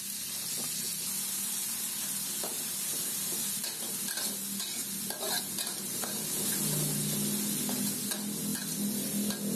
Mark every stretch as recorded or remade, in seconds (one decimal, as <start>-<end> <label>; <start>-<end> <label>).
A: 0.0-9.6 recorded